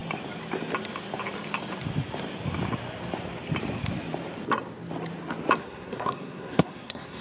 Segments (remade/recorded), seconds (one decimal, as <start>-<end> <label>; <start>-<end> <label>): 0.0-5.6 recorded; 5.6-7.2 remade